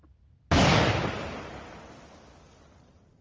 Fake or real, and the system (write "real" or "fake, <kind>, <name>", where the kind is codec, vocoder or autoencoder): real